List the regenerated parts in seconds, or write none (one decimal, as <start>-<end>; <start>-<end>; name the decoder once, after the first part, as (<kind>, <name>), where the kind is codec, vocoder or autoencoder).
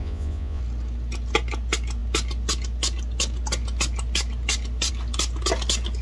0.0-0.6 (vocoder, Vocos)